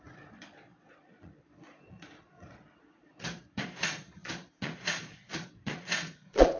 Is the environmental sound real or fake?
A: fake